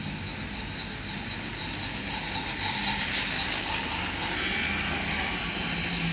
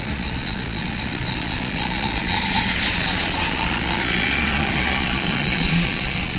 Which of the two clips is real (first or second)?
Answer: first